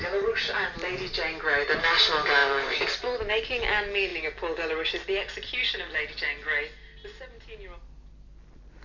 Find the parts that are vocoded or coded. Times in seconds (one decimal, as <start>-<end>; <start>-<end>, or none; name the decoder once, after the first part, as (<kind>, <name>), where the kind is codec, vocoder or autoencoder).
2.4-3.3 (vocoder, BigVGAN v2)